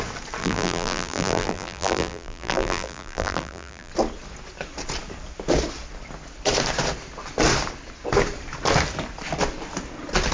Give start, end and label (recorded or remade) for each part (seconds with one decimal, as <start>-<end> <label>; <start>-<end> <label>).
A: 0.0-0.4 recorded; 0.4-3.9 remade; 3.9-10.3 recorded